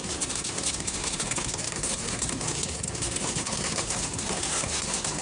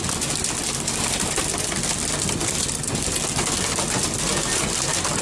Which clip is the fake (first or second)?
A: first